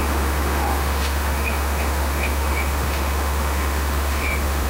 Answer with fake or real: fake